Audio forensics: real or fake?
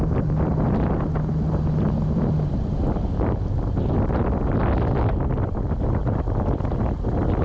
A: real